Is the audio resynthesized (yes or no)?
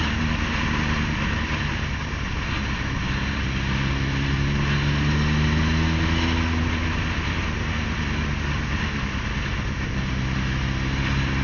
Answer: no